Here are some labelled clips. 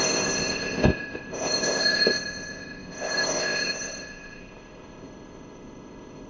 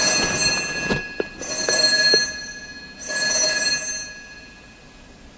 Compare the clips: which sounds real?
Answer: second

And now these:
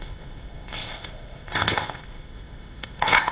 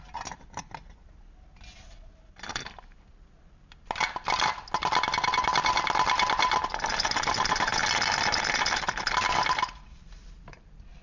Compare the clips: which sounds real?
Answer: second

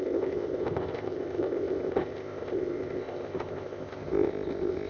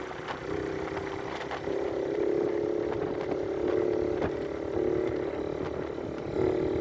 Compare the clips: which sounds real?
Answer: second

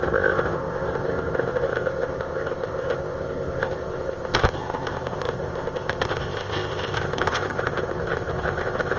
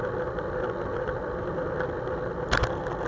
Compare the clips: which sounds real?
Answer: second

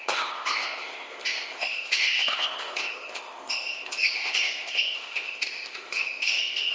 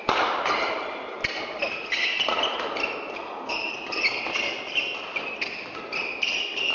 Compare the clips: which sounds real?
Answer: second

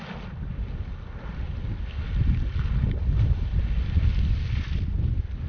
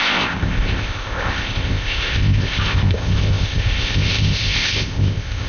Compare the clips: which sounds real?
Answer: first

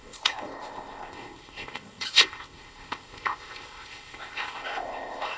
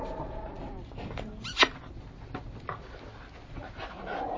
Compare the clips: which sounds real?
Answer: second